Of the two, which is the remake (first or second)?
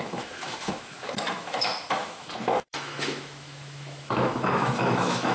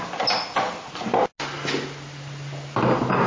first